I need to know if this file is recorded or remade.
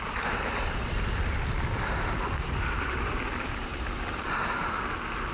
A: remade